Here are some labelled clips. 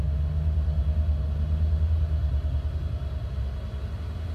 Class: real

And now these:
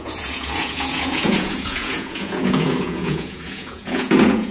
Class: fake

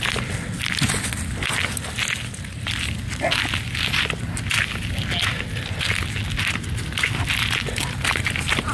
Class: real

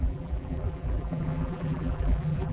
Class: fake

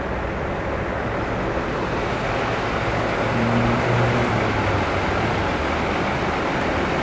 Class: real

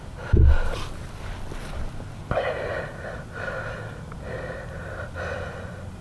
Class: real